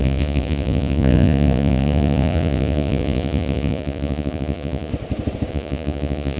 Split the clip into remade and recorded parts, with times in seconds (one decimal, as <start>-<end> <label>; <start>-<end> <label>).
0.0-4.9 remade; 4.9-5.5 recorded; 5.5-6.4 remade